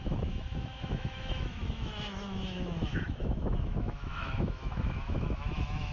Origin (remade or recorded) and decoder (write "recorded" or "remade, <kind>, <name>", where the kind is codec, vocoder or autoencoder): remade, autoencoder, DAC-VAE